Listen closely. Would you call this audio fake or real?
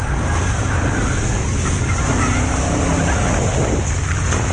real